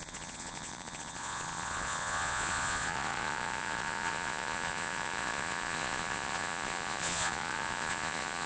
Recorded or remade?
remade